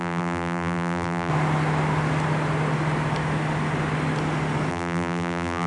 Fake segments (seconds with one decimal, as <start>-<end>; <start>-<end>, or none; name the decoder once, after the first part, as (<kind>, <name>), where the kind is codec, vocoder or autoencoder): 0.0-1.3 (vocoder, BigVGAN v2); 4.7-5.7